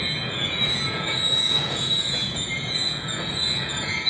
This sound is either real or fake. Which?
fake